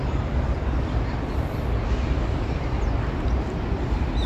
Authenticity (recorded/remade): recorded